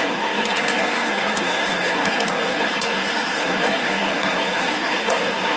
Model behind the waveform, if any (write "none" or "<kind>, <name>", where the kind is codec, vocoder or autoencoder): codec, SNAC